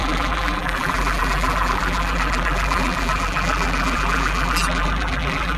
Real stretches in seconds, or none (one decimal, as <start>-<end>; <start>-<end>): none